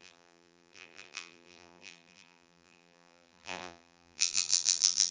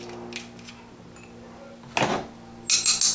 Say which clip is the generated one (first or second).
first